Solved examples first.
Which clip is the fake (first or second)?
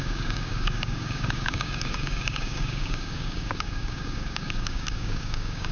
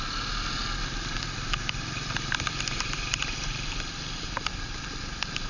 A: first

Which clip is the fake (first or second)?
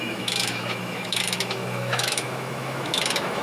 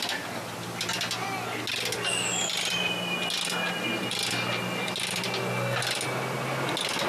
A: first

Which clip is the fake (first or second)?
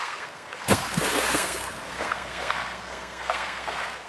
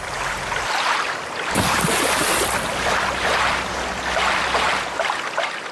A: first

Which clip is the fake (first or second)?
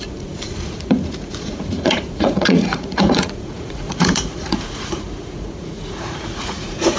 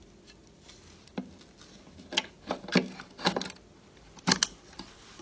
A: first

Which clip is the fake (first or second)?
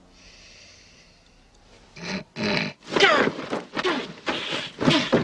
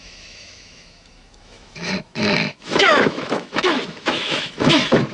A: second